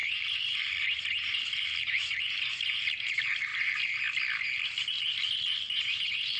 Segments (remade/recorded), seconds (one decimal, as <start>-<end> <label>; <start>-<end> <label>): 0.0-2.2 remade; 2.2-6.4 recorded